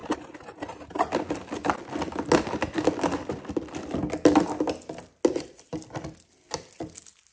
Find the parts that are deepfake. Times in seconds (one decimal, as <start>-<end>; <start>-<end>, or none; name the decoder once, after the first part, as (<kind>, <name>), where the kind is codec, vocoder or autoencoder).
none